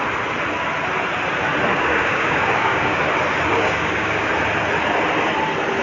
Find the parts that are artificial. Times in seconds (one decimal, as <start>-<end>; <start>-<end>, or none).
1.7-3.0; 3.5-4.3